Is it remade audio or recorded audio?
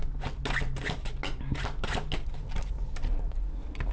recorded